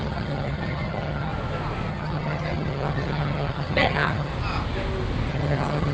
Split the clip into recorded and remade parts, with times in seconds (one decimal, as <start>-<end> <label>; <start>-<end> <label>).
0.0-1.3 remade; 1.3-1.9 recorded; 1.9-4.3 remade; 4.3-5.3 recorded; 5.3-5.9 remade